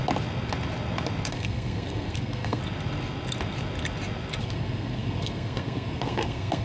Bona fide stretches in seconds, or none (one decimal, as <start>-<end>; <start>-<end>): 0.0-1.3; 2.6-4.4